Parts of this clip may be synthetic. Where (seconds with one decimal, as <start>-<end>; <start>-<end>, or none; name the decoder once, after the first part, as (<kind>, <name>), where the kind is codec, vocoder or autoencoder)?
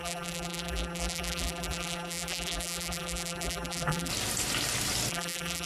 0.0-4.1 (vocoder, BigVGAN v2); 5.1-5.7